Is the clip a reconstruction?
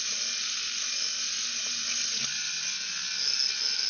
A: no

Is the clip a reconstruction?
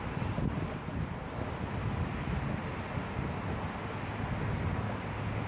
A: no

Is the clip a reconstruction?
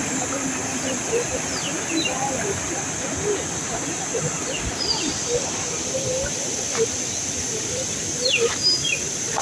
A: no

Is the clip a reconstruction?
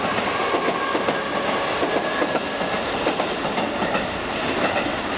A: no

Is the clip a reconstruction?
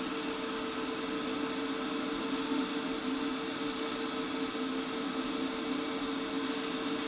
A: no